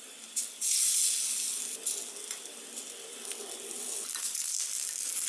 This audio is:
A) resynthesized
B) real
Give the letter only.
B